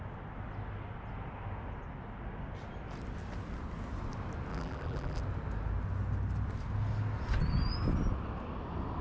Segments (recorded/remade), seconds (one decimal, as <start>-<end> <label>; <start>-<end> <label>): 0.0-4.5 recorded; 4.5-5.2 remade; 5.2-9.0 recorded